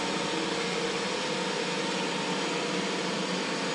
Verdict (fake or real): real